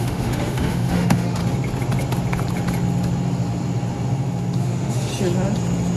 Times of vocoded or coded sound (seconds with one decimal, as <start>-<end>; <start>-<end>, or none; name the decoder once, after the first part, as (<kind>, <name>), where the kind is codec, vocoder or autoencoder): 0.0-1.4 (autoencoder, DAC-VAE); 4.6-5.1